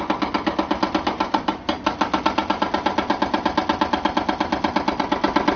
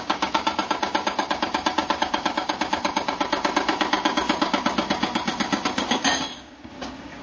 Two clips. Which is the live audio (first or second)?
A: first